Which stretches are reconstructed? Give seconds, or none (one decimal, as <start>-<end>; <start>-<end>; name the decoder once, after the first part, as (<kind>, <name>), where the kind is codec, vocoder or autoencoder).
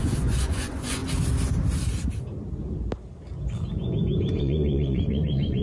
0.0-1.0 (vocoder, Vocos); 4.4-5.6